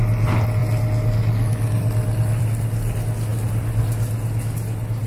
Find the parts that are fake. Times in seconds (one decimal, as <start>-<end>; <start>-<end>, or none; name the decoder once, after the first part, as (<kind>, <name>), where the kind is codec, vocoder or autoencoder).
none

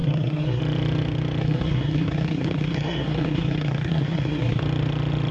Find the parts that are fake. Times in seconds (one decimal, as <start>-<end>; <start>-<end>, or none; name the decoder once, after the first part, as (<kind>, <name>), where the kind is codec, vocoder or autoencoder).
0.0-0.6 (codec, SNAC); 1.4-4.6

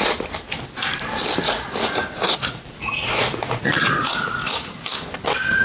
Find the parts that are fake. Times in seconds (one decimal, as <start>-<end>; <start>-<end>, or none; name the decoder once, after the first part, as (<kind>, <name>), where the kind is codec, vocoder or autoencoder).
1.4-4.8 (vocoder, Vocos)